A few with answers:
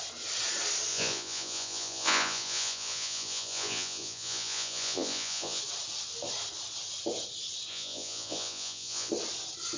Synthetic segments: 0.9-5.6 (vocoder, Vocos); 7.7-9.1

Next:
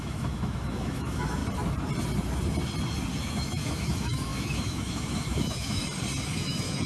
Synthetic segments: 0.0-1.4 (autoencoder, DAC-VAE); 3.2-5.8; 6.3-6.9

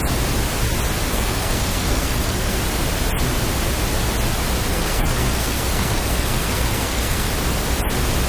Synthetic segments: 1.1-2.6 (codec, SNAC); 4.7-7.3

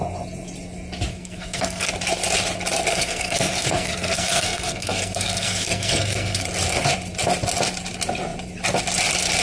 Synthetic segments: 1.1-1.9 (codec, SNAC); 2.9-6.4

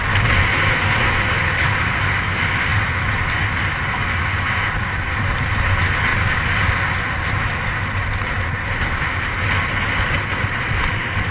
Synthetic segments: none

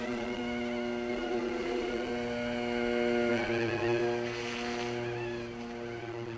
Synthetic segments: 0.0-0.4 (vocoder, Vocos); 1.1-2.1; 3.3-4.0; 6.0-6.4

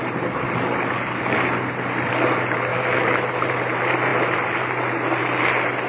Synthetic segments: 2.7-3.2 (autoencoder, DAC-VAE)

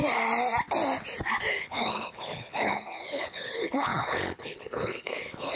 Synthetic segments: 1.5-5.6 (codec, HILCodec)